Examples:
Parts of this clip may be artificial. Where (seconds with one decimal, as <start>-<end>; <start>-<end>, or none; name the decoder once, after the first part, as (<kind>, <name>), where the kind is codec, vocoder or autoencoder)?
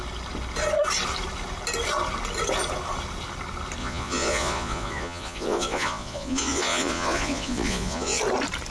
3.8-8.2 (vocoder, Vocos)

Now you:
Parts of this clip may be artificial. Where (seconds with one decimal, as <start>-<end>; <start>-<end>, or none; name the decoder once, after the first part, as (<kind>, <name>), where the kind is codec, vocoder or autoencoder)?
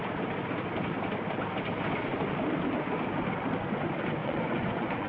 4.2-5.1 (vocoder, Vocos)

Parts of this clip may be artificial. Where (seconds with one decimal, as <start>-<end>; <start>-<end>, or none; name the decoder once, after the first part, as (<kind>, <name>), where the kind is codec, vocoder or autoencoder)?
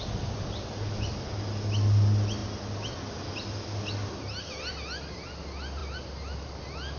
none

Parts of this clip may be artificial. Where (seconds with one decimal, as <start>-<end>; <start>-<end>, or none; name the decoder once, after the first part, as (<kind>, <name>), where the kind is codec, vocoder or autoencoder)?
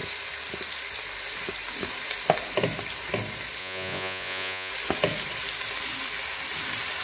3.6-4.7 (vocoder, Vocos)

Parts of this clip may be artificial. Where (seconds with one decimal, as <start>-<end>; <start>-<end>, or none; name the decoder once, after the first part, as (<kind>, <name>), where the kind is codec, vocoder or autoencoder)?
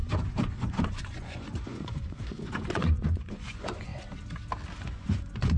0.0-3.9 (vocoder, Vocos); 4.8-5.6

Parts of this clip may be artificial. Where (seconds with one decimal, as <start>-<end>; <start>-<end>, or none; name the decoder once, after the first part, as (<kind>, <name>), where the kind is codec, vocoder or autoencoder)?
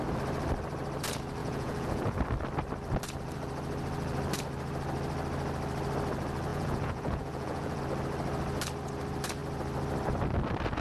1.4-2.2 (vocoder, Vocos); 6.5-7.8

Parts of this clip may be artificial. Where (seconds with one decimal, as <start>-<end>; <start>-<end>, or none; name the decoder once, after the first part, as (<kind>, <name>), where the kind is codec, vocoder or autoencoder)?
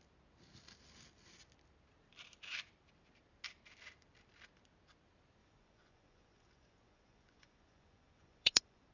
5.4-8.9 (vocoder, Vocos)